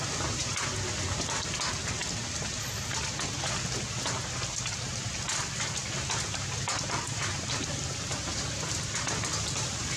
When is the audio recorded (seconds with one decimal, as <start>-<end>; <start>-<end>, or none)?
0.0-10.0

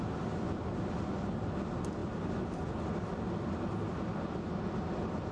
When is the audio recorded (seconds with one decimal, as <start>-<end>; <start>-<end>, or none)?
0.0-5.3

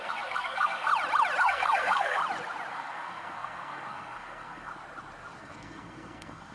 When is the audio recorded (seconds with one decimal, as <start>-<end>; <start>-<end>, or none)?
0.9-1.4; 2.2-2.7; 4.7-5.4

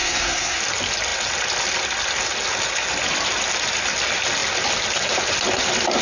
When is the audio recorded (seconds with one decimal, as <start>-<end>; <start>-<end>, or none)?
0.6-6.0

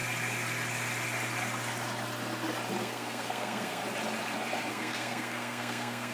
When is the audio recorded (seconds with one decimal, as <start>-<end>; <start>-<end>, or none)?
0.0-2.8; 3.8-4.7

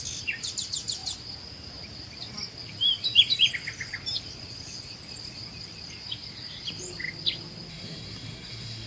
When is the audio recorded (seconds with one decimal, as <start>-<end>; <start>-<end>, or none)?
0.0-7.7

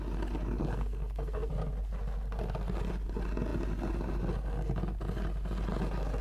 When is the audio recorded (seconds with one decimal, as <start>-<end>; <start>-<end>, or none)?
0.0-0.6; 1.5-6.2